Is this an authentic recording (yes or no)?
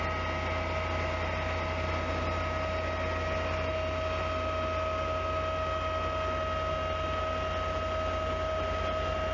yes